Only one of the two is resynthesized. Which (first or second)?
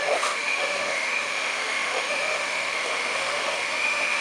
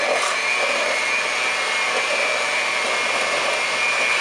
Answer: first